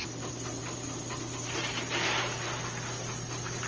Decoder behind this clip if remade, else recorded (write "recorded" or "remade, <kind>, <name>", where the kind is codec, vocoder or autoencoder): recorded